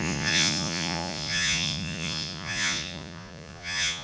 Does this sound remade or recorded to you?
remade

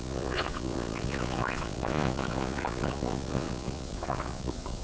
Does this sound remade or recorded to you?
remade